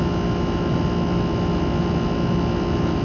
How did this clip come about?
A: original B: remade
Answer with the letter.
A